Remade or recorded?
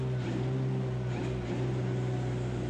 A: recorded